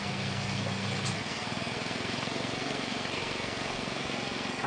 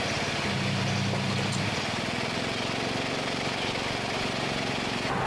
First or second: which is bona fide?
second